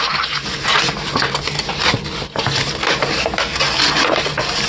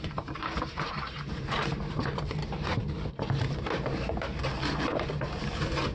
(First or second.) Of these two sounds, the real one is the first